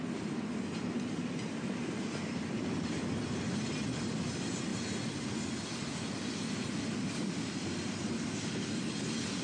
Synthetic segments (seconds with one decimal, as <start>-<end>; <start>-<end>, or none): none